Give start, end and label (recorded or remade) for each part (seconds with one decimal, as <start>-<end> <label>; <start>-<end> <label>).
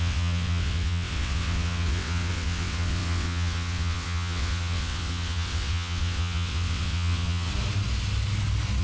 0.0-7.5 remade; 7.5-8.8 recorded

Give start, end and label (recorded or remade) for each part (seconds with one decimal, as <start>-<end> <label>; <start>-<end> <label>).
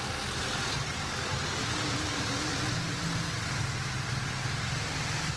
0.0-5.4 recorded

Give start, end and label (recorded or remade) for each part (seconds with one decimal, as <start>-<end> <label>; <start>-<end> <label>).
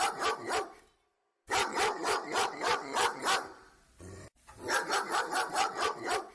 0.0-1.6 recorded; 1.6-3.2 remade; 3.2-5.6 recorded; 5.6-6.3 remade